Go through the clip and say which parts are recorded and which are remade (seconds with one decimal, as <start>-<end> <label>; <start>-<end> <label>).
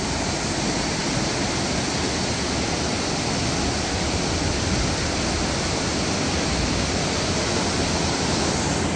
0.0-9.0 recorded